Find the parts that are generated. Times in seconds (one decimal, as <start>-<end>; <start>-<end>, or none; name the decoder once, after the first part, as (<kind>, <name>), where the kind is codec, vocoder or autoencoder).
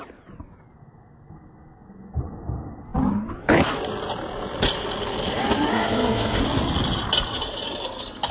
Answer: 5.7-6.4 (codec, SNAC)